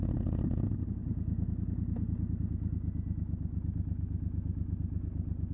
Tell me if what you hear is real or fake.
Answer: real